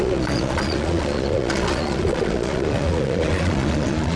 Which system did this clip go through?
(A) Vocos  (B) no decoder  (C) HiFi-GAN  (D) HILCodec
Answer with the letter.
A